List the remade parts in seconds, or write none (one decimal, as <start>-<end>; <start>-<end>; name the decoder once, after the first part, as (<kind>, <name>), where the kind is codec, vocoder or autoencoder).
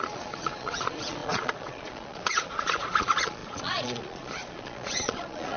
0.0-5.6 (vocoder, Vocos)